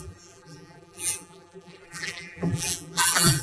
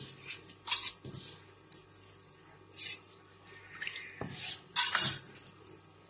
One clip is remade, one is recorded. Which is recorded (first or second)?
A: second